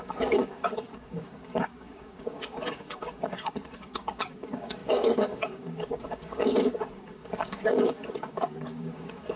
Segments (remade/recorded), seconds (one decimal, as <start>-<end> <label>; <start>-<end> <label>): 0.0-9.4 remade